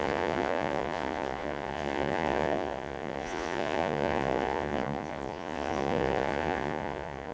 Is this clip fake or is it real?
fake